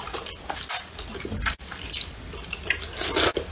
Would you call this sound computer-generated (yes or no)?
no